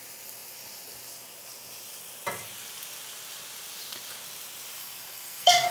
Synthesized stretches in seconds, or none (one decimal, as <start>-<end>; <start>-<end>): 4.8-5.7